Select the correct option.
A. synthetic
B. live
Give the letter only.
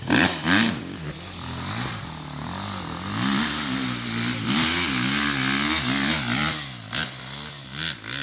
B